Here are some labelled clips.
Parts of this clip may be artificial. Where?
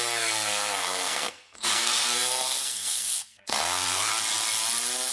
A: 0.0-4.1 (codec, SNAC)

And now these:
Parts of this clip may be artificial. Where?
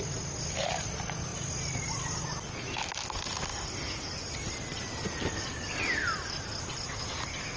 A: none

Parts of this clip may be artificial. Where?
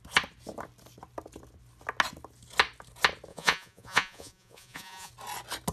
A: 3.3-5.1 (vocoder, Vocos)